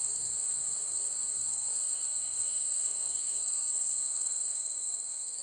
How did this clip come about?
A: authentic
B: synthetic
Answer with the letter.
B